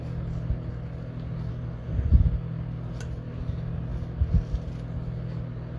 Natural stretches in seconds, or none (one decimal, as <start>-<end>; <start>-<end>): 0.0-1.5; 2.1-5.8

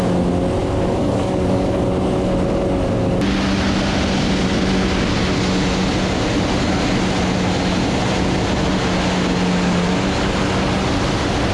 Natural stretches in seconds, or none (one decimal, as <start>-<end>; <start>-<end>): 0.0-0.6; 1.8-11.5